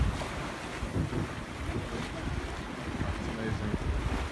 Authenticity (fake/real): real